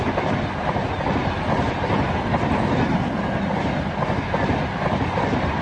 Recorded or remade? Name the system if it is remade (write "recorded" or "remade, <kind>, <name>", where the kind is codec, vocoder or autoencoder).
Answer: recorded